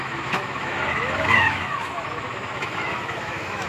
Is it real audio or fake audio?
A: fake